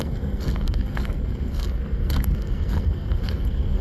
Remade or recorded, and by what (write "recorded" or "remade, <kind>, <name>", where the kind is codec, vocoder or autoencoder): remade, codec, SNAC